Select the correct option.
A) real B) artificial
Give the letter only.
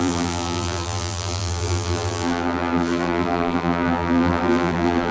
B